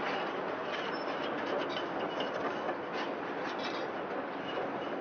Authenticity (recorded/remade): recorded